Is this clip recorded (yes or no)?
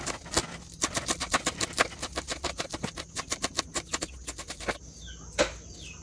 yes